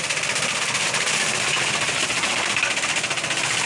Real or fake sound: real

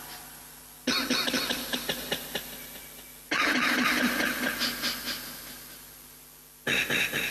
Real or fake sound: real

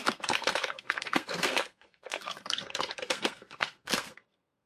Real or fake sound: fake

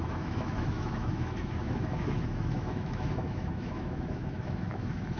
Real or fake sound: fake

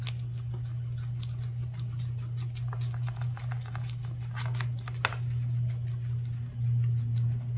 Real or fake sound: real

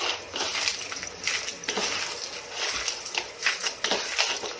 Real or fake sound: real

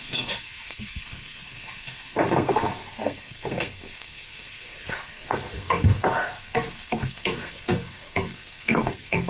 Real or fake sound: fake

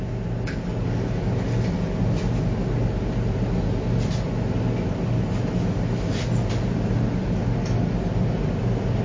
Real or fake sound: real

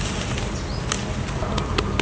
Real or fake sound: real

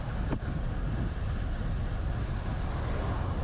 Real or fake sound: real